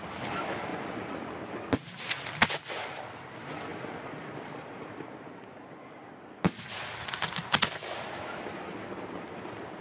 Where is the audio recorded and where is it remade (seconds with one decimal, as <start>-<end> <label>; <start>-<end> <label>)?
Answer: 0.0-0.7 recorded; 0.7-1.3 remade; 1.3-9.8 recorded